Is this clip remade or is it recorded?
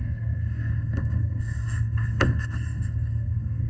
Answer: remade